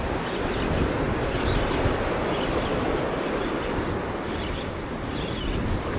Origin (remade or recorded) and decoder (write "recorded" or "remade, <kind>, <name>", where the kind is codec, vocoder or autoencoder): recorded